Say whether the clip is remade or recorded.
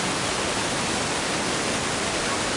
recorded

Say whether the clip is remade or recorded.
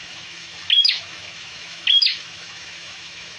remade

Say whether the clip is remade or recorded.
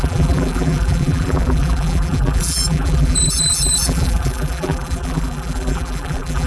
remade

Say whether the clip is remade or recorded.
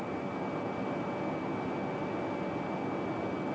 recorded